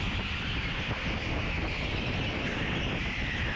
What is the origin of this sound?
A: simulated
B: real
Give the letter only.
B